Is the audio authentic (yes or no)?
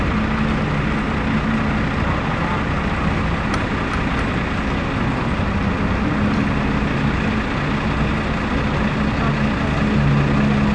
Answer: yes